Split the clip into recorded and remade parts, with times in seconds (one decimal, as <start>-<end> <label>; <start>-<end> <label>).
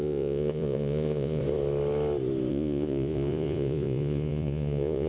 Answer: 0.0-1.4 remade; 1.4-2.5 recorded; 2.5-5.1 remade